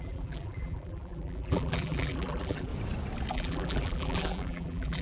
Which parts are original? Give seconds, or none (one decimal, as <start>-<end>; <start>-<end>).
2.7-3.3